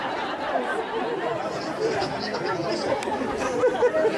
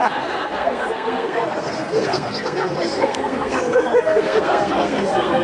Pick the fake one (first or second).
second